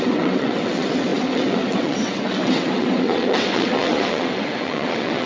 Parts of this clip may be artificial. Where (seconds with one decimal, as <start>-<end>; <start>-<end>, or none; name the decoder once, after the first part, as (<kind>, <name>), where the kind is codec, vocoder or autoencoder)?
0.0-5.3 (vocoder, WaveNeXt)